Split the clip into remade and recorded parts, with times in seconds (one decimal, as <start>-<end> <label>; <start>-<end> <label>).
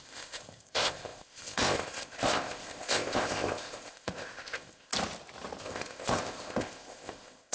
0.0-4.9 remade; 4.9-5.6 recorded; 5.6-7.5 remade